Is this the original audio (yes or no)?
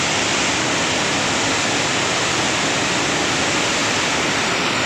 yes